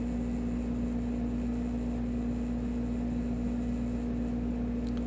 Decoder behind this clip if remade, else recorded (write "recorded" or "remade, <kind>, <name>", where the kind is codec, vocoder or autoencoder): recorded